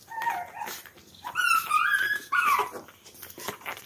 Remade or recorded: recorded